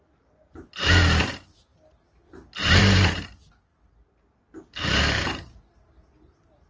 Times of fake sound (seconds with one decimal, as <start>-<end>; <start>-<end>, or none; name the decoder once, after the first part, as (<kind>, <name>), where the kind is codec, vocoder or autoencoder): none